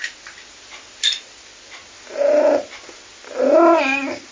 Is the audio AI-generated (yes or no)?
no